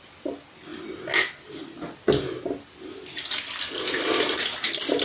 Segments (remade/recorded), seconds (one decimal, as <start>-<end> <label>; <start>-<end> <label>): 0.0-5.0 recorded